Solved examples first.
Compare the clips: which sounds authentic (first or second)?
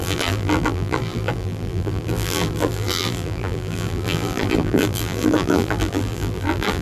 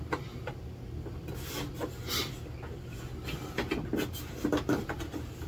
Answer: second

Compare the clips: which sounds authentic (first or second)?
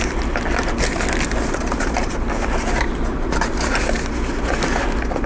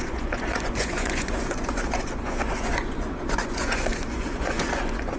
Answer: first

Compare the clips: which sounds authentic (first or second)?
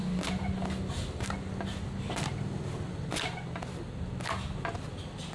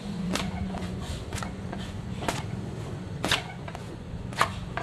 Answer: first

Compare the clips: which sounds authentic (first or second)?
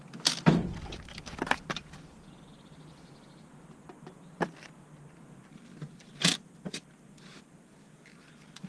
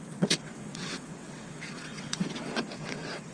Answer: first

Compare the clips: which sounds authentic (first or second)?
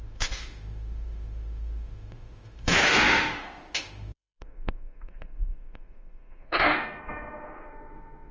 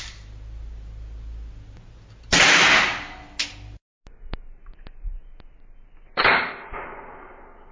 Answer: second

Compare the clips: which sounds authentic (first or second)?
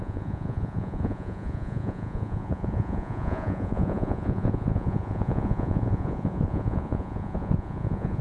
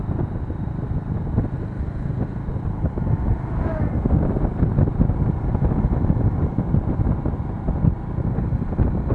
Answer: second